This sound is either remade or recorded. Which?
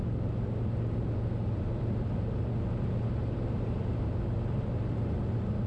recorded